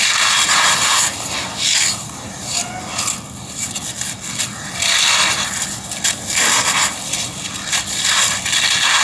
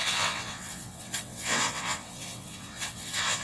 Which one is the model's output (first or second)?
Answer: second